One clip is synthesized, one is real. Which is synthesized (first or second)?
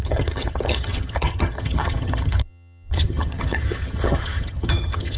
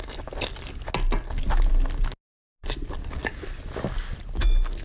first